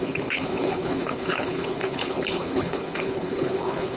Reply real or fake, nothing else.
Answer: fake